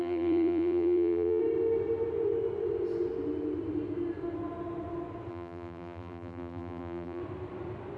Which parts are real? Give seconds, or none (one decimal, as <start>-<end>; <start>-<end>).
1.4-5.3; 7.2-8.0